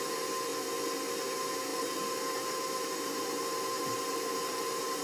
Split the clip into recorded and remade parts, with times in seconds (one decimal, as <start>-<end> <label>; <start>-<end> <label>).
0.0-0.5 remade; 0.5-1.1 recorded; 1.1-5.0 remade